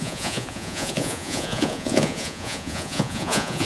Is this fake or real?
fake